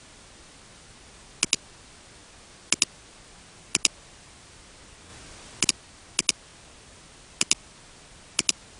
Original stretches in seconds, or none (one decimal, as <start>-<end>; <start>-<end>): 0.0-8.8